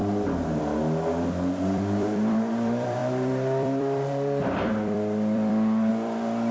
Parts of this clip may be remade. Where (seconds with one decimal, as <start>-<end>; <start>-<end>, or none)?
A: 1.6-6.5